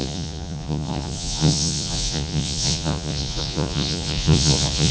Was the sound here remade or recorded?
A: remade